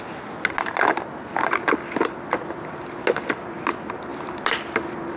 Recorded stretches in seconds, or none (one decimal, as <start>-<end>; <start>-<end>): 0.0-4.1; 4.6-5.2